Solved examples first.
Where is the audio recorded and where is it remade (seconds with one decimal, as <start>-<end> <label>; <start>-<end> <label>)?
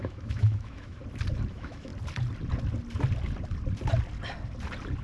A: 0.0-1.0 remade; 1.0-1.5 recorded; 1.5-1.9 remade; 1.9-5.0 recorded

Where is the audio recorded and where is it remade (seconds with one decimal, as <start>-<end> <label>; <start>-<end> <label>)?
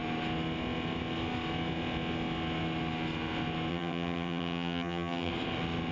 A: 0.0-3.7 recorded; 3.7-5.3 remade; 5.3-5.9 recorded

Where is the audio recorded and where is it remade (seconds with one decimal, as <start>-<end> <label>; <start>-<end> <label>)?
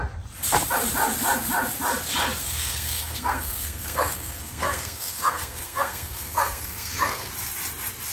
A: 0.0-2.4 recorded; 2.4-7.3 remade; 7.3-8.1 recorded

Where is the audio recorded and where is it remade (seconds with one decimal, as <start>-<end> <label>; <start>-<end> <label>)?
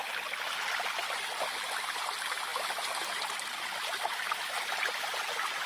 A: 0.0-5.7 recorded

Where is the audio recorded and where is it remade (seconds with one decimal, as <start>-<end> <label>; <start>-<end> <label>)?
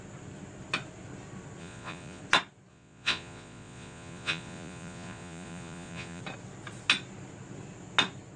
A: 0.0-1.6 recorded; 1.6-2.2 remade; 2.2-2.7 recorded; 2.7-6.2 remade; 6.2-8.4 recorded